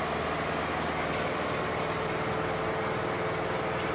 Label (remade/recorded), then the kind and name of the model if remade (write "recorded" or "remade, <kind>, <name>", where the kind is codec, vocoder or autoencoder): recorded